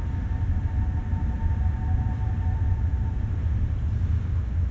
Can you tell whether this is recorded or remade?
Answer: recorded